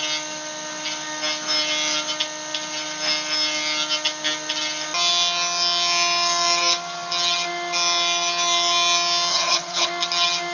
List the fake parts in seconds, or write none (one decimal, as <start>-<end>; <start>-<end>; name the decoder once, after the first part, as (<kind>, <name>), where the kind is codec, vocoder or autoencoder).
9.3-9.9 (codec, HILCodec)